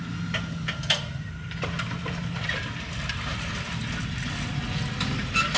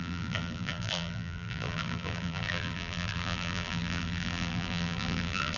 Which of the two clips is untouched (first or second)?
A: first